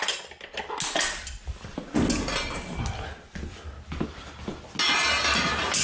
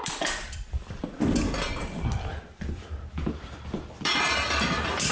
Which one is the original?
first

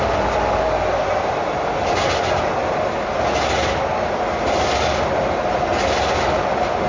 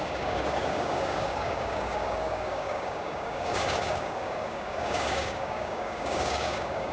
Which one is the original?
first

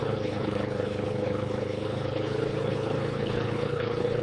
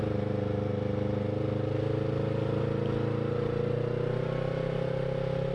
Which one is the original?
second